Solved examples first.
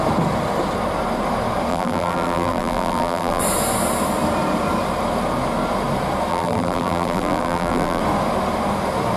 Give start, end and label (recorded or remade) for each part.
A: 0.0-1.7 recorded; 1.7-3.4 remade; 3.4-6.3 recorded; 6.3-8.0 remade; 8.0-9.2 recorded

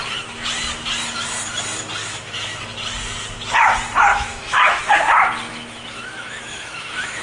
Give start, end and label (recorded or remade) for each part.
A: 0.0-2.0 recorded; 2.0-2.6 remade; 2.6-4.1 recorded; 4.1-4.8 remade; 4.8-5.5 recorded; 5.5-7.2 remade

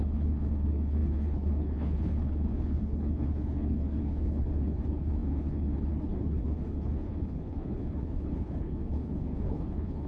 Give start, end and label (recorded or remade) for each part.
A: 0.0-10.1 remade

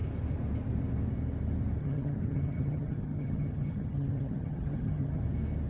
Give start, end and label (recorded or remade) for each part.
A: 0.0-1.8 recorded; 1.8-5.2 remade; 5.2-5.7 recorded